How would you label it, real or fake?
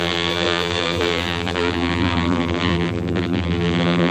fake